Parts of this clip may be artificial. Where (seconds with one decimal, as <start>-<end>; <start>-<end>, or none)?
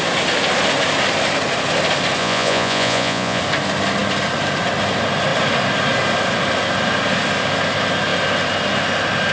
2.2-3.4